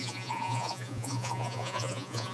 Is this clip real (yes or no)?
no